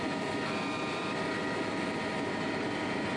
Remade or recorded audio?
remade